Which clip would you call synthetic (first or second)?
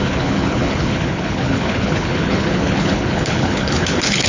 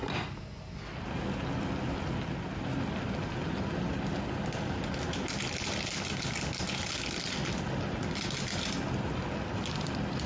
first